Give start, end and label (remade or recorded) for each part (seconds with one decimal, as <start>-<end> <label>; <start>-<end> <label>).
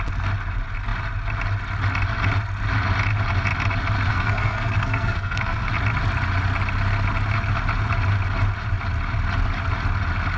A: 0.0-4.1 recorded; 4.1-5.7 remade; 5.7-10.4 recorded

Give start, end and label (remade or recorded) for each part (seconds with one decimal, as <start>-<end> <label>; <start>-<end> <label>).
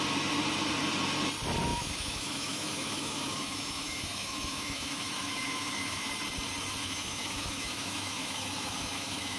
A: 0.0-1.7 recorded; 1.7-6.1 remade; 6.1-6.8 recorded; 6.8-9.4 remade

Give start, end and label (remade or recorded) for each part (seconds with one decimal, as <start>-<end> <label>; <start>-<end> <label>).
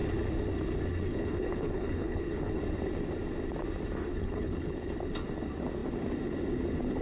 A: 0.0-1.1 recorded; 1.1-2.6 remade; 2.6-4.1 recorded; 4.1-4.9 remade; 4.9-7.0 recorded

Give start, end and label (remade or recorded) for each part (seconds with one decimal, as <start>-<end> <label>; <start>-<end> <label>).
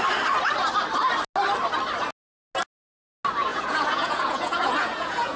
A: 0.0-3.5 recorded; 3.5-5.4 remade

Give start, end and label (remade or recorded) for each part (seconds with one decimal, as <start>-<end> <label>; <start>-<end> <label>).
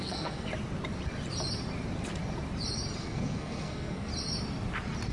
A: 0.0-0.5 remade; 0.5-3.0 recorded; 3.0-4.1 remade; 4.1-5.1 recorded